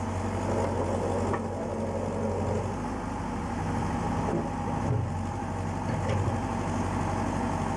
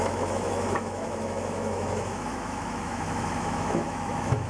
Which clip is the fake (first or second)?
second